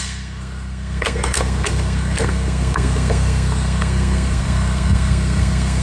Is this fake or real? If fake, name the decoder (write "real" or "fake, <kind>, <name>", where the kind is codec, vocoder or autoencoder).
fake, codec, SNAC